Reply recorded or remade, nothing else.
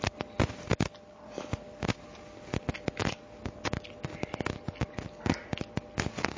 recorded